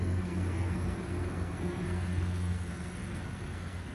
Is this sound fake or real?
fake